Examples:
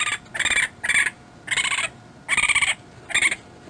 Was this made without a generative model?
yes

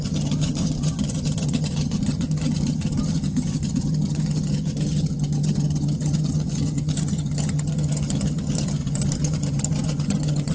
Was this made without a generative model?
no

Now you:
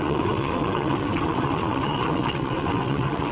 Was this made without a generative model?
no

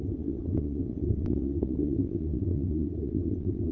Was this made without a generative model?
no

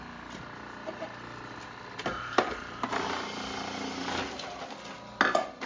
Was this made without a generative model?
yes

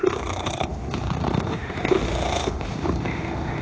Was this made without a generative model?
no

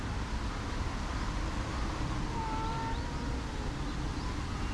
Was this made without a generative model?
yes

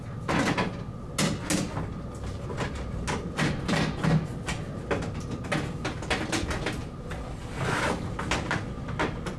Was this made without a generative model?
yes